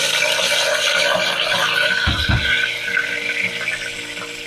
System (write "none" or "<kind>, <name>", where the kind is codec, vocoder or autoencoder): none